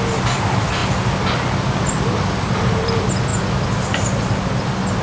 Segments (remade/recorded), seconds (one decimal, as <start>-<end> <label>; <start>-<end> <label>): 0.0-5.0 recorded